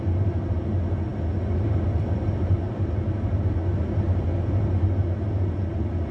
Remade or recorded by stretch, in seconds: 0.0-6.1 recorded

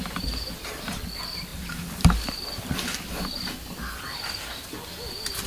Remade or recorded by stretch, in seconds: 0.0-5.5 recorded

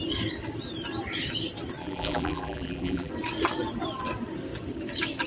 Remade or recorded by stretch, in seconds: 0.0-1.8 recorded; 1.8-3.1 remade; 3.1-5.3 recorded